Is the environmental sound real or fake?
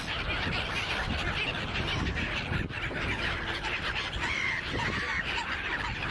real